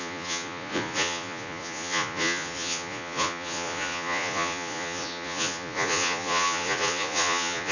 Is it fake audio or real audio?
fake